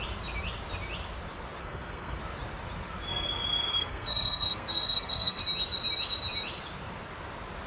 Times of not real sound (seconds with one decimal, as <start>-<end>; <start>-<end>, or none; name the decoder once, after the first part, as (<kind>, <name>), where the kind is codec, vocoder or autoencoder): 1.6-2.2 (codec, SNAC); 3.1-5.4

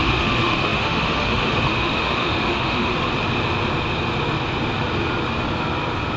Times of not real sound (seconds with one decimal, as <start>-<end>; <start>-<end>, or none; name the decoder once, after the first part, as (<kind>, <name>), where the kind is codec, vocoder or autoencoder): 0.0-2.9 (autoencoder, DAC-VAE)

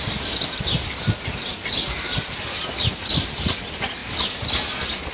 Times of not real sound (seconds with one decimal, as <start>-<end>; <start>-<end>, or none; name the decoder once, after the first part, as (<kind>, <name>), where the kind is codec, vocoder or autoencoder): 4.0-5.1 (vocoder, BigVGAN v2)

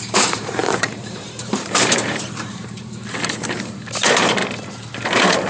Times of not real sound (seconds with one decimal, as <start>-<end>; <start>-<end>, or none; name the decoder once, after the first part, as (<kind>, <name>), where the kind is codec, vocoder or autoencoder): 0.0-4.4 (vocoder, BigVGAN v2); 5.0-5.5

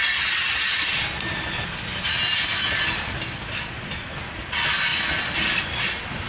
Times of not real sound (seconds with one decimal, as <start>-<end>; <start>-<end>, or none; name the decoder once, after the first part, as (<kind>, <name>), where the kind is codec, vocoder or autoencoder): none